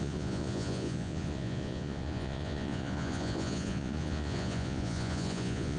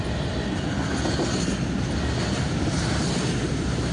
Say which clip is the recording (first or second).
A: second